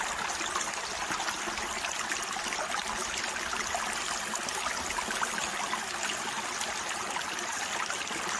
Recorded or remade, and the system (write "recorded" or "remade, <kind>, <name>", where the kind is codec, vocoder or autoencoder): recorded